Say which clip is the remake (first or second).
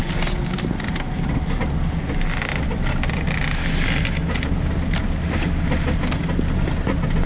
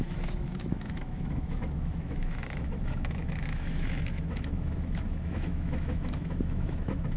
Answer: second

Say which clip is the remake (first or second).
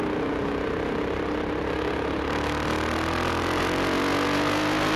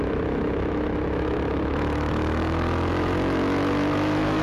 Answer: second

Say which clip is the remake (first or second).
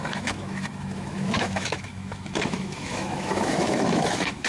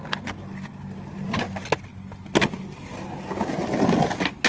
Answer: first